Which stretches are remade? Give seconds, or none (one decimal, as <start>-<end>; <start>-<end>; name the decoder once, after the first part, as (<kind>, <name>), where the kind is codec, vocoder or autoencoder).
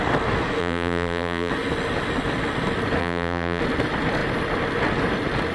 0.6-1.5 (vocoder, BigVGAN v2); 3.0-3.6